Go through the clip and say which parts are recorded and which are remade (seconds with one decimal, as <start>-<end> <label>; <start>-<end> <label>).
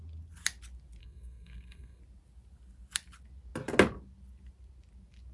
0.0-1.0 recorded; 1.0-2.0 remade; 2.0-5.3 recorded